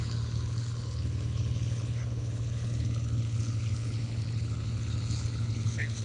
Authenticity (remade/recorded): remade